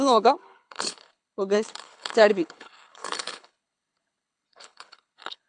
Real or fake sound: fake